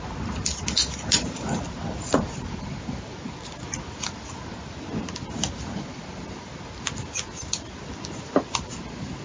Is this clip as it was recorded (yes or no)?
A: yes